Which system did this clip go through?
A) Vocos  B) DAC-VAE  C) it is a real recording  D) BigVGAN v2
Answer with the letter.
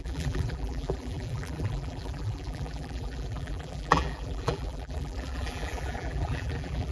D